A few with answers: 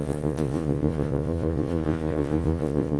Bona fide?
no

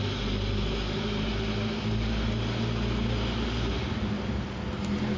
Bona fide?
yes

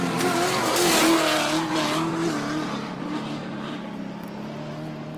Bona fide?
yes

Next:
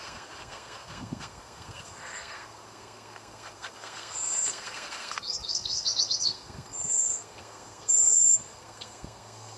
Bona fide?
no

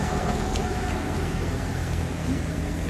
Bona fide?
no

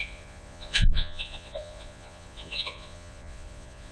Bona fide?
no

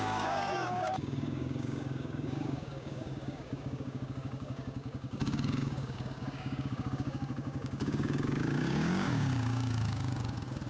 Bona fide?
no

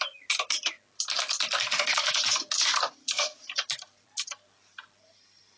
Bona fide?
yes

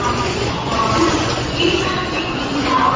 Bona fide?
no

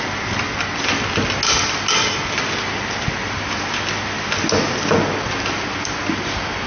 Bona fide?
yes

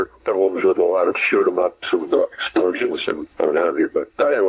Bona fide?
no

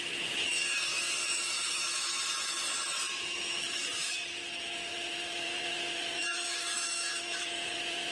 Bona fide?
no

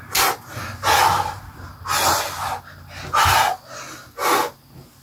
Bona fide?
yes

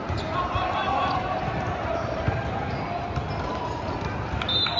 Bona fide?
yes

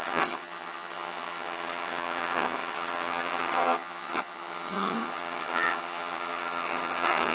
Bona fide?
no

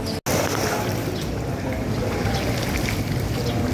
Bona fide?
yes